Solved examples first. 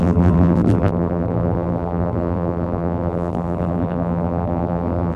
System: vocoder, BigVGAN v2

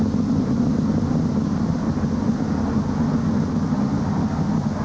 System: none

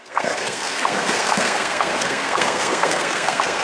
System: codec, SNAC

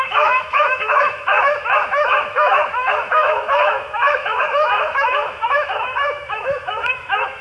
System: autoencoder, DAC-VAE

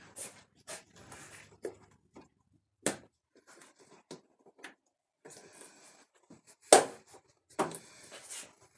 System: none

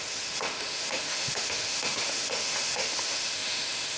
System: autoencoder, DAC-VAE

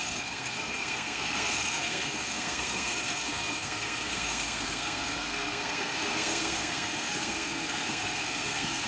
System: codec, SNAC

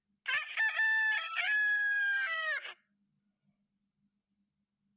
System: none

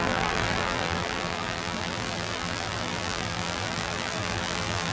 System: vocoder, BigVGAN v2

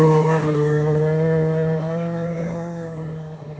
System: codec, SNAC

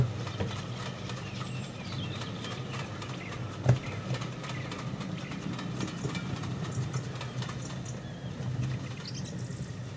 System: none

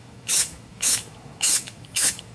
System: autoencoder, DAC-VAE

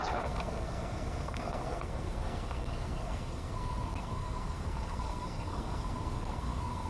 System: codec, SNAC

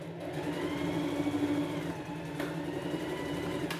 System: none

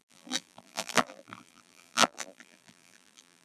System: vocoder, BigVGAN v2